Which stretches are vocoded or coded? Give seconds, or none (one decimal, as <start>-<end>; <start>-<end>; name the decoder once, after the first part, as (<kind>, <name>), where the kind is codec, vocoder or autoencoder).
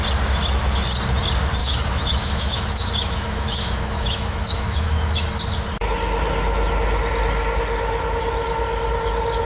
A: 1.6-5.4 (autoencoder, DAC-VAE)